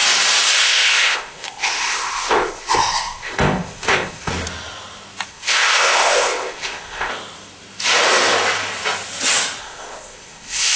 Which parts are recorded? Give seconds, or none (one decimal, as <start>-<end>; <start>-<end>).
0.0-0.6; 4.3-5.3; 7.1-9.6